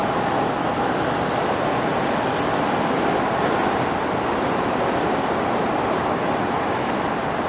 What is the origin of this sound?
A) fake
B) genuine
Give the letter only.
B